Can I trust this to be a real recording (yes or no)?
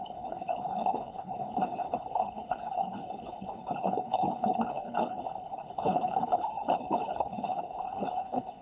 no